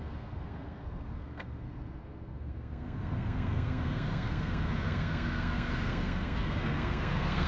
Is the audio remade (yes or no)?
yes